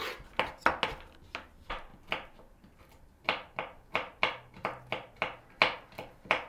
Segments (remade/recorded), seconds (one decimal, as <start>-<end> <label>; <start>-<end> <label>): 0.0-6.5 recorded